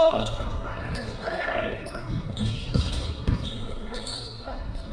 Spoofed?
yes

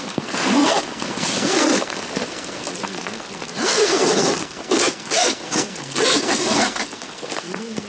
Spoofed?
yes